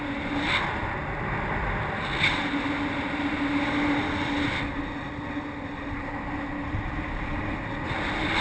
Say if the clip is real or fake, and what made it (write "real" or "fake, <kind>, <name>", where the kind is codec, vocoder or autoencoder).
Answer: real